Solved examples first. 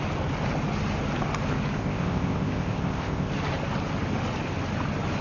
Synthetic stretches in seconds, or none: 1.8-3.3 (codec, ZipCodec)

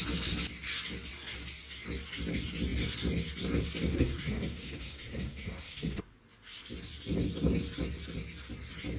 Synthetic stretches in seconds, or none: 3.9-6.1 (codec, SNAC)

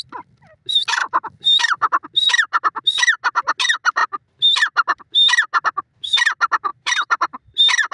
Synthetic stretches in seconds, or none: 6.7-7.9 (vocoder, BigVGAN v2)

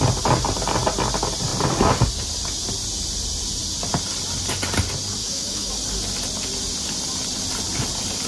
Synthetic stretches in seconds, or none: 5.2-5.7 (autoencoder, DAC-VAE)